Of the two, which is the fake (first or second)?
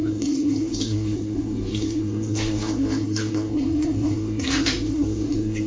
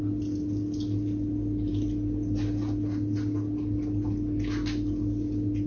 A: first